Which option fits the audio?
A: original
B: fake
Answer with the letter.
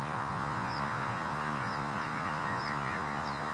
B